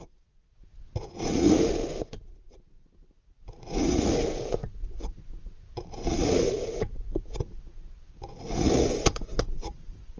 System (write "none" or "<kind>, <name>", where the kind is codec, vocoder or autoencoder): vocoder, Vocos